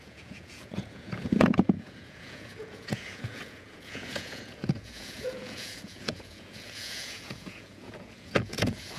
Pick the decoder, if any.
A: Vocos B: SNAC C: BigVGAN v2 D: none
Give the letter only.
A